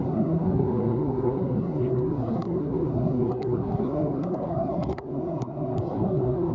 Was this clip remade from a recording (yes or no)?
yes